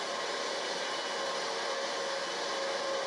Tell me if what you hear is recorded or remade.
recorded